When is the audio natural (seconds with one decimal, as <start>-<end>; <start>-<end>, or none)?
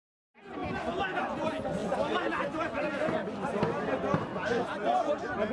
0.0-5.5